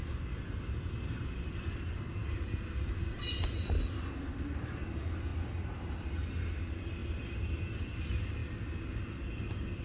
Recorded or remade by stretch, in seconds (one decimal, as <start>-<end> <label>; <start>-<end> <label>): 0.0-3.6 remade; 3.6-9.8 recorded